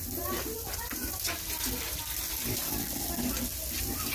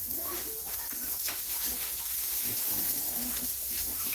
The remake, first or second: second